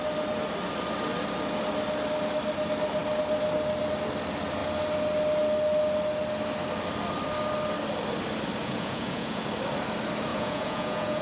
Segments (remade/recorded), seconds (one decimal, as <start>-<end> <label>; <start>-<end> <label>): 0.0-8.6 recorded; 8.6-9.4 remade; 9.4-10.3 recorded; 10.3-11.2 remade